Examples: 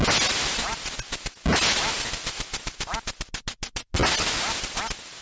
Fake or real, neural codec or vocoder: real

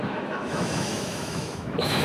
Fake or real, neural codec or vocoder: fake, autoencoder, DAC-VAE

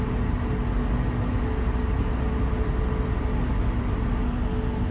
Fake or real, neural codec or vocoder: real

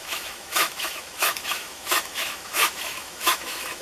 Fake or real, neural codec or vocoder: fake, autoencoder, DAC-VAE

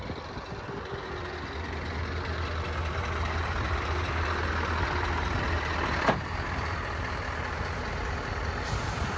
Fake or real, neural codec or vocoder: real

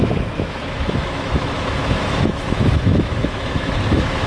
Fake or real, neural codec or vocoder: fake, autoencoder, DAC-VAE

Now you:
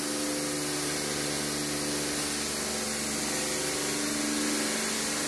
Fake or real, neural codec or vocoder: real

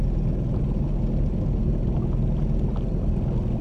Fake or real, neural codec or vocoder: real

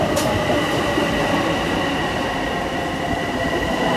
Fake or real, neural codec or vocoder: real